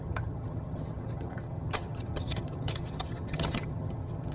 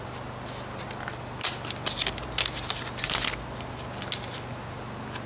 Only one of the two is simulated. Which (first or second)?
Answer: first